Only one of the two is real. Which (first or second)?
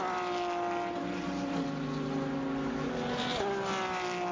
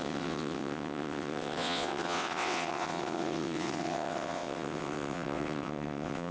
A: first